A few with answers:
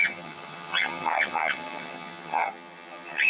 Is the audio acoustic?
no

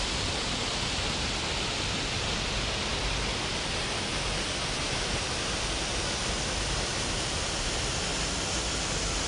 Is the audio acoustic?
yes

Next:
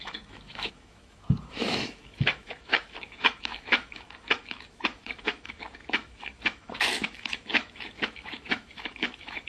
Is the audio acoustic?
no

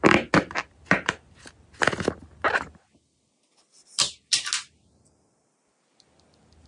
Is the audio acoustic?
yes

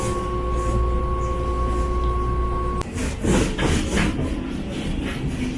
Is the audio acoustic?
yes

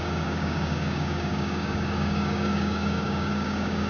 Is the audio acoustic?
no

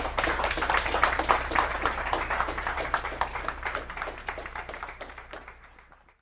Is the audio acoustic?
no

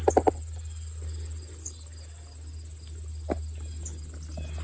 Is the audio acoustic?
yes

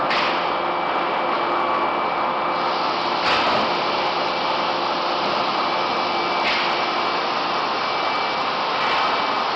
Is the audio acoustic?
yes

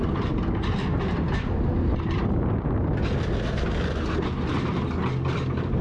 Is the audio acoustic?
yes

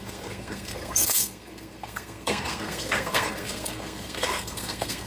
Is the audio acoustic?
no